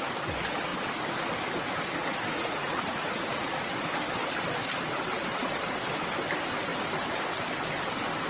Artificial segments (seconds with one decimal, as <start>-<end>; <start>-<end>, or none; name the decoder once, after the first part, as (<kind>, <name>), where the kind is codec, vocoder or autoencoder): 2.3-3.7 (vocoder, Vocos)